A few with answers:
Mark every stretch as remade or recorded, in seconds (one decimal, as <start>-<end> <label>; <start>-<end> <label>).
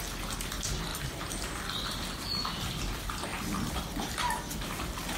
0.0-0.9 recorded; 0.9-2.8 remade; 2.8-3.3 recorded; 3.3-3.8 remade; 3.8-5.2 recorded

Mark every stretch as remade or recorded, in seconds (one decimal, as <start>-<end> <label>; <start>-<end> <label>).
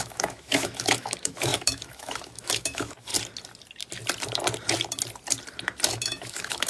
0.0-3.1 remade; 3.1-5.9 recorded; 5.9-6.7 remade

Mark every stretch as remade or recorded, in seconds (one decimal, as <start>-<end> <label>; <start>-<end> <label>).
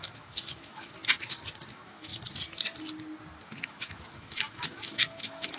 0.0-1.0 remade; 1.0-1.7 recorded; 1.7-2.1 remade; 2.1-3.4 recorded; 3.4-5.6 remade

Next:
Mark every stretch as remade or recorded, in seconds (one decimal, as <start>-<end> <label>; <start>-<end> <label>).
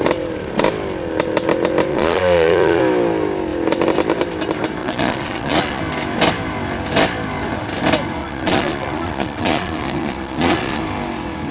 0.0-1.9 recorded; 1.9-2.8 remade; 2.8-4.8 recorded; 4.8-5.8 remade; 5.8-8.2 recorded; 8.2-10.8 remade; 10.8-11.5 recorded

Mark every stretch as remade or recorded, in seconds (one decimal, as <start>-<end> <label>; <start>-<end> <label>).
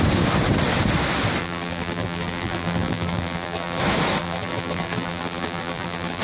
0.0-1.4 recorded; 1.4-3.8 remade; 3.8-4.2 recorded; 4.2-6.2 remade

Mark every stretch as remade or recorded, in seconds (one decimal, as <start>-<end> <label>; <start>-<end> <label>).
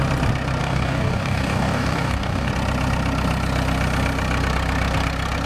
0.0-0.6 recorded; 0.6-2.5 remade; 2.5-5.5 recorded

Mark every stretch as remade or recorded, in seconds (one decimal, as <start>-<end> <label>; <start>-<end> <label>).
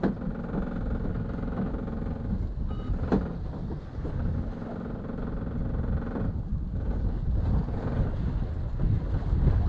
0.0-1.1 recorded; 1.1-1.7 remade; 1.7-9.7 recorded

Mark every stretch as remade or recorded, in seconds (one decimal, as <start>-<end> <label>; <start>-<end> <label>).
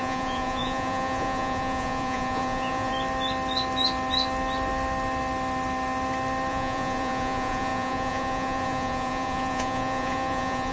0.0-2.9 remade; 2.9-6.5 recorded; 6.5-10.7 remade